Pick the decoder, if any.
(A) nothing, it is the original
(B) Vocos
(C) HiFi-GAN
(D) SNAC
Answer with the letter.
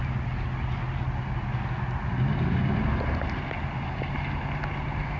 A